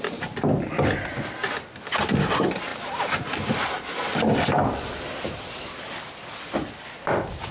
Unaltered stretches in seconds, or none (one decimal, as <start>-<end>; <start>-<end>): 0.0-7.5